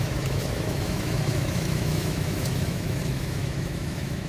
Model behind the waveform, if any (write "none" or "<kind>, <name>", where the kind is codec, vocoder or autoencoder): autoencoder, DAC-VAE